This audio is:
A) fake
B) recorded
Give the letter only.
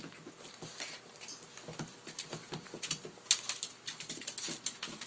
B